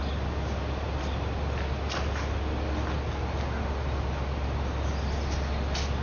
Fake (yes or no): no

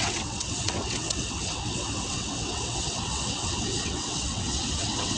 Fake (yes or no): yes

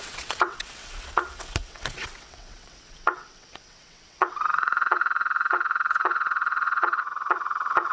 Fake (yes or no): yes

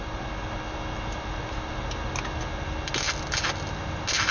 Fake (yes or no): no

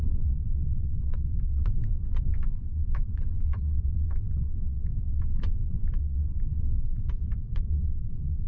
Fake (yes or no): yes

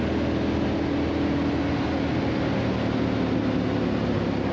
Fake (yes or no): no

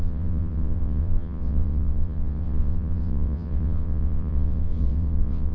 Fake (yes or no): yes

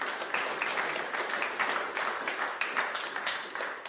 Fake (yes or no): no